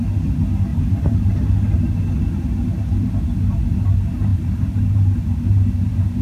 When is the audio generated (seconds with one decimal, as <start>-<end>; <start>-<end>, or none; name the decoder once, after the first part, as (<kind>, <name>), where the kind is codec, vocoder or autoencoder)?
0.7-1.3 (vocoder, BigVGAN v2); 4.3-5.2